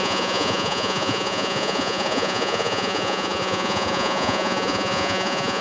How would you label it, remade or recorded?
remade